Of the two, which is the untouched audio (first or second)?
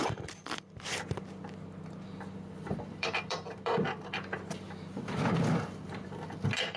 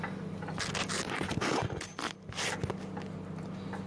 second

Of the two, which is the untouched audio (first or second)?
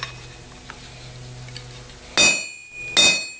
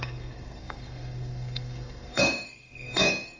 first